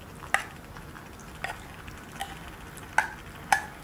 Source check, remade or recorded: recorded